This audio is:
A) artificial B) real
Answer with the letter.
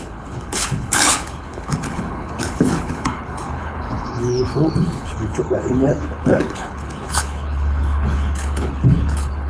A